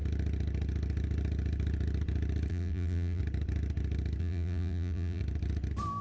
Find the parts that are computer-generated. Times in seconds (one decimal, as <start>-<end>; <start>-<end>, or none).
2.5-3.2; 4.2-5.2